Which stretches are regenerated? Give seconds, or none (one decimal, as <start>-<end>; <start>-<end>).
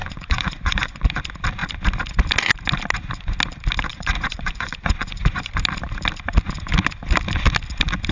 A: 0.0-1.1; 3.9-5.5